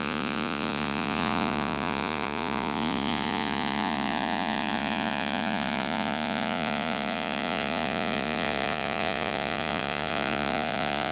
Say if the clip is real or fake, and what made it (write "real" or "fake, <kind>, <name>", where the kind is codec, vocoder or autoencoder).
fake, vocoder, Vocos